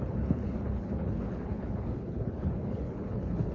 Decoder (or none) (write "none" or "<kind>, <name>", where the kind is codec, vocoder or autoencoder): codec, HILCodec